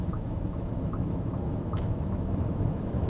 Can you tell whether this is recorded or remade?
remade